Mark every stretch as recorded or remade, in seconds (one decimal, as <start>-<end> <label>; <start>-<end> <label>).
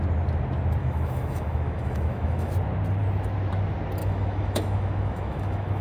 0.0-0.8 recorded; 0.8-2.5 remade; 2.5-4.0 recorded; 4.0-5.8 remade